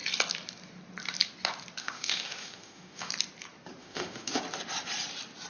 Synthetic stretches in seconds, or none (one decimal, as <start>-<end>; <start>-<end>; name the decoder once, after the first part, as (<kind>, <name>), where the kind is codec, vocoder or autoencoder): 1.8-3.1 (autoencoder, DAC-VAE); 3.8-4.4